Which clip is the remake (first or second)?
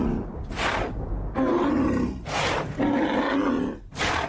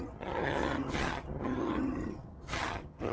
second